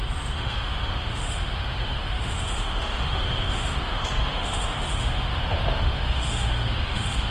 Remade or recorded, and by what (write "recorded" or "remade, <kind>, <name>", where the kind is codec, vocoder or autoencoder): remade, autoencoder, DAC-VAE